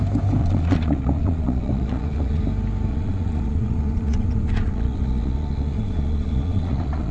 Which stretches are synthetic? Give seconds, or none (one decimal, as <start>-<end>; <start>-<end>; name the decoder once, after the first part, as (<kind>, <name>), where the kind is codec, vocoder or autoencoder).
0.4-2.4 (vocoder, Vocos); 2.9-7.1